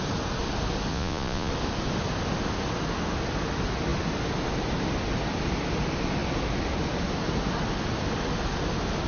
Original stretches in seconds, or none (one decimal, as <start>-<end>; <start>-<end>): 0.0-0.9; 1.5-9.1